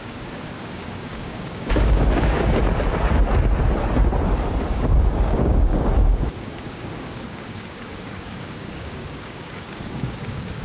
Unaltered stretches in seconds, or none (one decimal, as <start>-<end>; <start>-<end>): 2.6-4.7